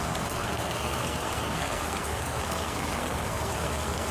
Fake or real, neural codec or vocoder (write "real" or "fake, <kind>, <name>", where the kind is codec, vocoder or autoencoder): fake, codec, SNAC